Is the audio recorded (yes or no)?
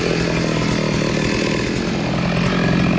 yes